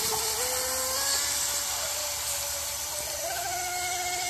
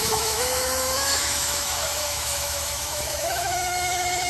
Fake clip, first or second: second